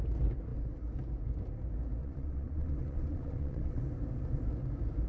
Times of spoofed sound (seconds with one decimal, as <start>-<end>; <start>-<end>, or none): 2.0-3.8